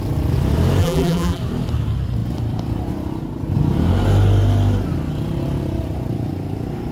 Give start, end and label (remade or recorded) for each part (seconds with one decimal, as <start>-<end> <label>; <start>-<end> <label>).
0.0-0.8 recorded; 0.8-1.4 remade; 1.4-6.9 recorded